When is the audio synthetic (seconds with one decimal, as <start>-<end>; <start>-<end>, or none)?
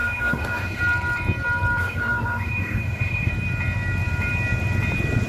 0.0-0.8; 1.8-3.3